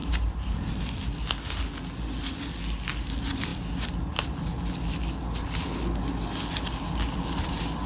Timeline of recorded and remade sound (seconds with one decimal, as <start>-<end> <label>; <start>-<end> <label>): 0.0-0.8 remade; 0.8-7.9 recorded